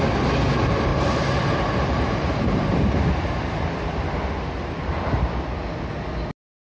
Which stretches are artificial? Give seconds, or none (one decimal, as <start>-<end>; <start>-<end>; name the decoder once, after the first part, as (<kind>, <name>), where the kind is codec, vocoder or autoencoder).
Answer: 0.9-3.6 (vocoder, BigVGAN v2)